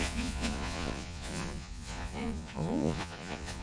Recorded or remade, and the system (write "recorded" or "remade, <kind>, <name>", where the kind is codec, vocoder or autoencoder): remade, vocoder, Vocos